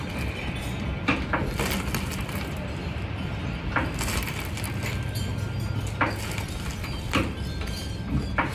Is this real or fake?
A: real